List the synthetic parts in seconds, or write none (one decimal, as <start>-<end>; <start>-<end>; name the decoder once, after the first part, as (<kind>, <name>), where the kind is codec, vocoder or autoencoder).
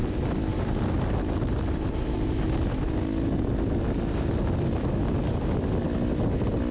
none